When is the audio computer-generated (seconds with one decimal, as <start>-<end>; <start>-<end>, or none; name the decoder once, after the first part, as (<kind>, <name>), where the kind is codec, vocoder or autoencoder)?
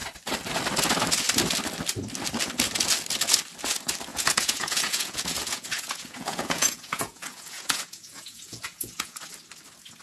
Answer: 4.1-9.2 (vocoder, Vocos)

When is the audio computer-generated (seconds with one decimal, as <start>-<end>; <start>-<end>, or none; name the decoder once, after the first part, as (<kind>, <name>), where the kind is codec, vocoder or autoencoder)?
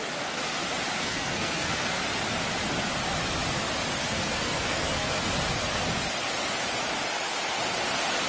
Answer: 1.0-2.0 (codec, SNAC); 4.0-5.3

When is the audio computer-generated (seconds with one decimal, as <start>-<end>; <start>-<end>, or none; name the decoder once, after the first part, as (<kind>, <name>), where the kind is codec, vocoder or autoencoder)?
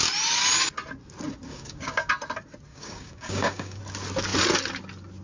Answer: 1.5-2.1 (codec, DAC); 2.7-3.8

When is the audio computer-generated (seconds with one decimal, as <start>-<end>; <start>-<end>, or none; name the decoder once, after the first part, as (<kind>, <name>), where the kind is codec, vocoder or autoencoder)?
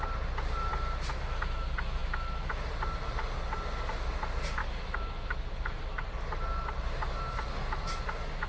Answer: 4.6-5.8 (autoencoder, DAC-VAE)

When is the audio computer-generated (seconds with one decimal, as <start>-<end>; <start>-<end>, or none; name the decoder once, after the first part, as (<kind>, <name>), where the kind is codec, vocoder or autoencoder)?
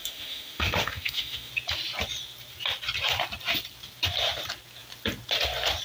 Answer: 0.0-1.5 (autoencoder, DAC-VAE)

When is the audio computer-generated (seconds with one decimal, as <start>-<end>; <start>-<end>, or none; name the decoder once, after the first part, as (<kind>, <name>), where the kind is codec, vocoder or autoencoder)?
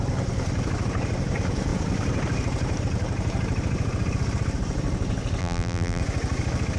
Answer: 5.4-6.0 (vocoder, BigVGAN v2)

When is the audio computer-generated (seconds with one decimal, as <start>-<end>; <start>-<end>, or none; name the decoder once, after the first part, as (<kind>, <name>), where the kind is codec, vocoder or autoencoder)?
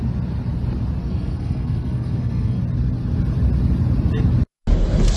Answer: 1.0-2.6 (codec, SNAC)